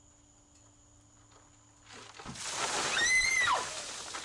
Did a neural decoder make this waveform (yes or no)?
no